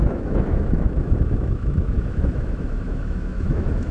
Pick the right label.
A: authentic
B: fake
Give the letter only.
B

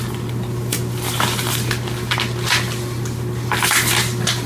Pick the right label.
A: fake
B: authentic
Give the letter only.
B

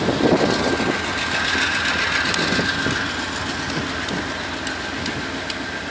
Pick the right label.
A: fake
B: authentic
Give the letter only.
B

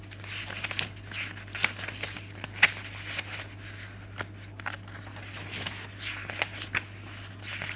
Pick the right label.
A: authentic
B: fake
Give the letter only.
A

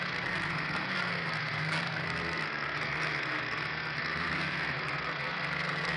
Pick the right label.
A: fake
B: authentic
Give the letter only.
A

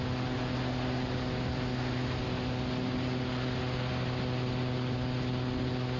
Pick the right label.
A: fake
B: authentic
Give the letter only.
B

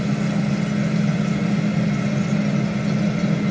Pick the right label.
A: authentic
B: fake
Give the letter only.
A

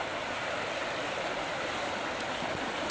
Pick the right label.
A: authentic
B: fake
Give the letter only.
A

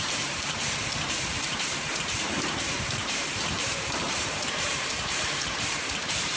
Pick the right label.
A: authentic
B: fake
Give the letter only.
B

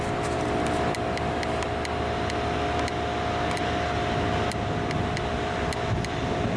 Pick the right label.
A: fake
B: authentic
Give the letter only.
B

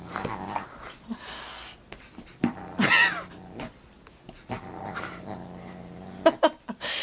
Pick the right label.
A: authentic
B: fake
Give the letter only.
A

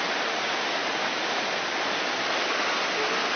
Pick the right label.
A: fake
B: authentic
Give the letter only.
B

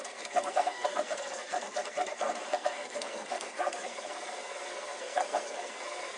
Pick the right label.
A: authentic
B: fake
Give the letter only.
B